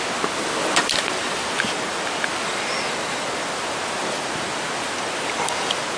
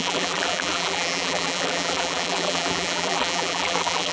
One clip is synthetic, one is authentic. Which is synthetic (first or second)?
second